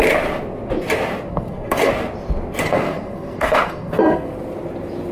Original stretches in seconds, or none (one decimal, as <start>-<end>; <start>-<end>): 0.0-1.3; 1.9-2.6; 4.3-5.1